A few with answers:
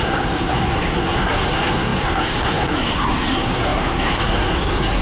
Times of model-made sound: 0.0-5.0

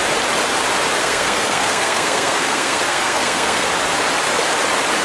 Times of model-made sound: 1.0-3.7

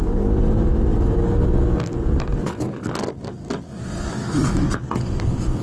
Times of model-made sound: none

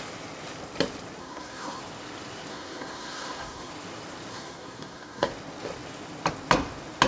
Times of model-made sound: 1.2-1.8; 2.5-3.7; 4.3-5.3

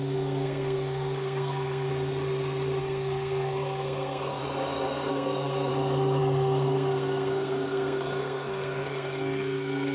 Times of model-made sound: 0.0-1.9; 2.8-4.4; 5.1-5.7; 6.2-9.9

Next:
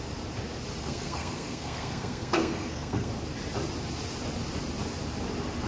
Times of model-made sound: 0.8-3.1

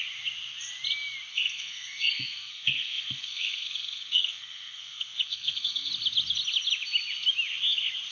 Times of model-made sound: 1.3-5.9

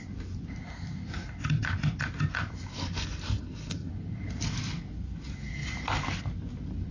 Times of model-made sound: 2.7-3.9